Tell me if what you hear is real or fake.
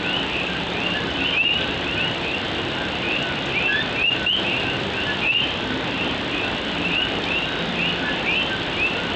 fake